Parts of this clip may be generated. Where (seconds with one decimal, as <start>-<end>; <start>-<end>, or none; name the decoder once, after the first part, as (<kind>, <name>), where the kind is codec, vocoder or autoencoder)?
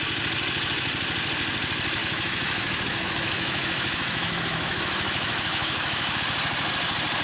2.0-6.2 (autoencoder, DAC-VAE)